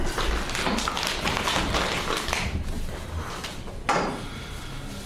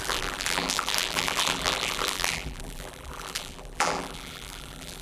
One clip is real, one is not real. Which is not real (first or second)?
second